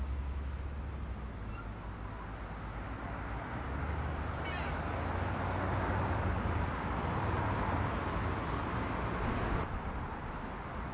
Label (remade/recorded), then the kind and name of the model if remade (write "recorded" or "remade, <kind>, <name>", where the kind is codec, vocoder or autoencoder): recorded